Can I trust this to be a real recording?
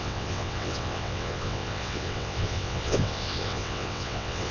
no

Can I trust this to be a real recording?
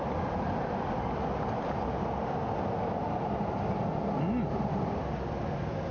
yes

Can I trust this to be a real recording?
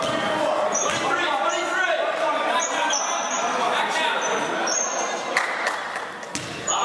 yes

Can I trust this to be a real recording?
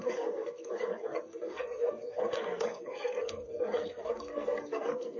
no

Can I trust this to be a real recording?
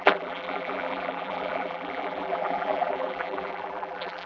no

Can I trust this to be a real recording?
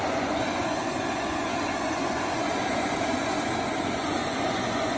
no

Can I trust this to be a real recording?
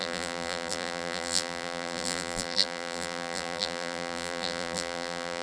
no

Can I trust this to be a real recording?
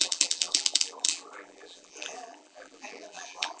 no